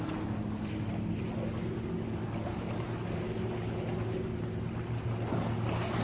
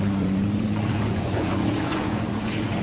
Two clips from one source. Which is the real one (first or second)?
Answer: first